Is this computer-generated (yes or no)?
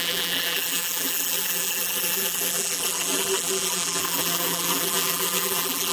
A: yes